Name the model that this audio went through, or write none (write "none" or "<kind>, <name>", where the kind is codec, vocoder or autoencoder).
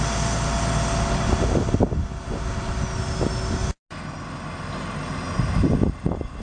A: none